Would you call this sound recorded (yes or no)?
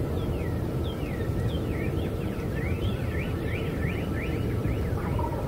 no